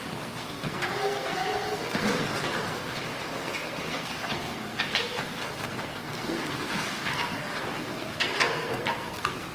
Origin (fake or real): fake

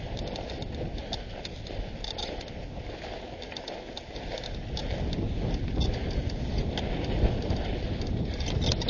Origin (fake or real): real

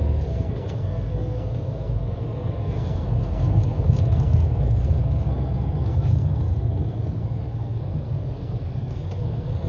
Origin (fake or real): fake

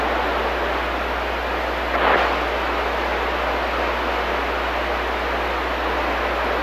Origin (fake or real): real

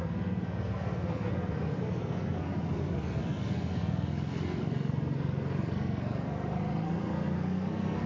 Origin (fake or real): fake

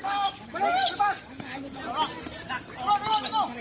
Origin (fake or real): real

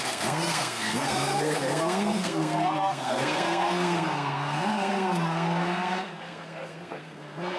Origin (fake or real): fake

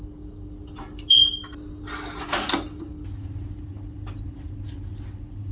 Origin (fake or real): real